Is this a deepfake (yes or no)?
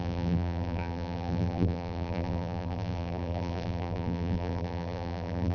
yes